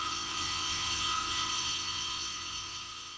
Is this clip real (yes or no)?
no